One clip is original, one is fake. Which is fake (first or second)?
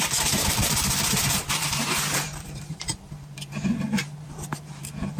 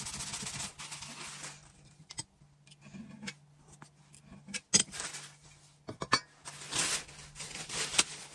first